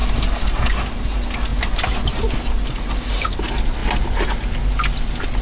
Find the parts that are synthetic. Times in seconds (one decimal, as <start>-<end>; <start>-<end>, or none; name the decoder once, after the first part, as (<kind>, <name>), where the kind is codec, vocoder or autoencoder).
none